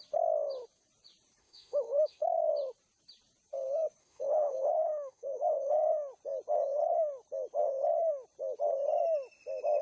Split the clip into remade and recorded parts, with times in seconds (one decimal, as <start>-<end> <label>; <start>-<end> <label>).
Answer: 0.0-1.4 recorded; 1.4-2.5 remade; 2.5-4.0 recorded; 4.0-5.7 remade; 5.7-9.8 recorded

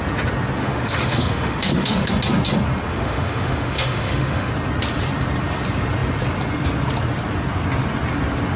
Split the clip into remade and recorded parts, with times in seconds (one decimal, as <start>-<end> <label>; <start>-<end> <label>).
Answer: 0.0-0.6 recorded; 0.6-2.1 remade; 2.1-2.9 recorded; 2.9-4.5 remade; 4.5-8.6 recorded